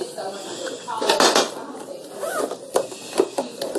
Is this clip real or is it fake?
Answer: real